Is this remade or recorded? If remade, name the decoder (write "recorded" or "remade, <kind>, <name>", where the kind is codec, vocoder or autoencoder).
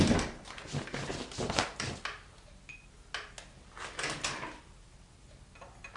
recorded